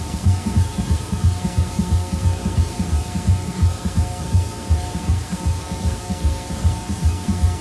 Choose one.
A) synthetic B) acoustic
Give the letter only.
A